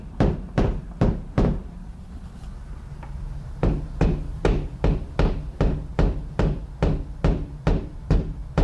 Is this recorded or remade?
remade